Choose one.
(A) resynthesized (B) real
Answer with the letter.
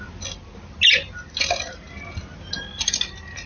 B